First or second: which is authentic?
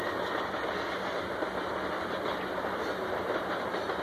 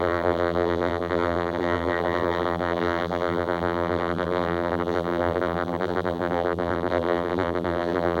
first